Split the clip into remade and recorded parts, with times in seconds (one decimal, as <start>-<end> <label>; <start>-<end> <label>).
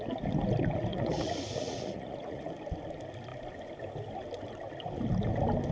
0.0-0.9 recorded; 0.9-2.5 remade; 2.5-5.7 recorded